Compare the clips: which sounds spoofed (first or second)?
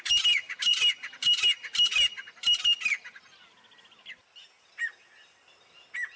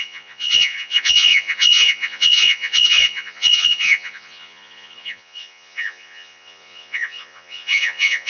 second